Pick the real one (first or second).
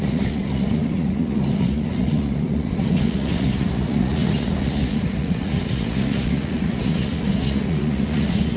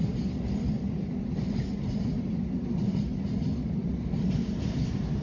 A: second